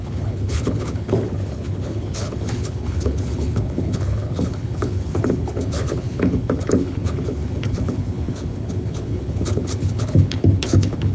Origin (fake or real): fake